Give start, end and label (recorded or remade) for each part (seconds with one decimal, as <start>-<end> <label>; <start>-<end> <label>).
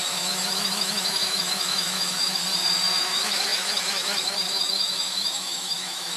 0.0-2.4 remade; 2.4-3.0 recorded; 3.0-6.2 remade